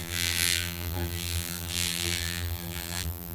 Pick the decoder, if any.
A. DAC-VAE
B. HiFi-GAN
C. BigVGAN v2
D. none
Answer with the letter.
C